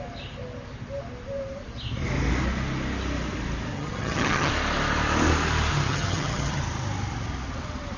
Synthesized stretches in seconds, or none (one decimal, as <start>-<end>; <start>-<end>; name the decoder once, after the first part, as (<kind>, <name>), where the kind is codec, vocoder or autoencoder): 3.7-4.5 (vocoder, HiFi-GAN); 5.9-6.6